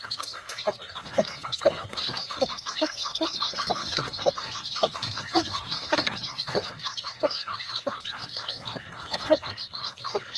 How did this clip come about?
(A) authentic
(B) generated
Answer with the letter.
B